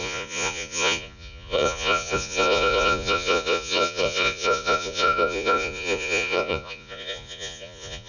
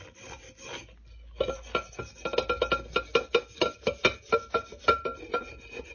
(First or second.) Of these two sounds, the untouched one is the second